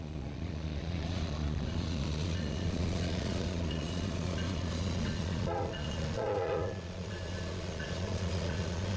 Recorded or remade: remade